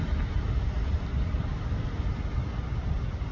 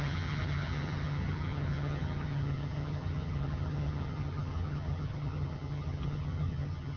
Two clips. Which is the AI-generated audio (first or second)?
second